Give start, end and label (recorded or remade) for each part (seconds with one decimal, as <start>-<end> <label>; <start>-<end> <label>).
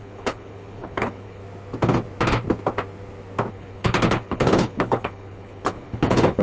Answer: 0.0-1.4 remade; 1.4-3.5 recorded; 3.5-6.4 remade